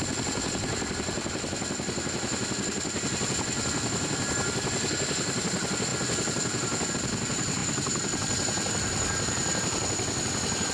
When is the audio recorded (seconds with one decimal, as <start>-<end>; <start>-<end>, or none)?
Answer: 0.0-10.7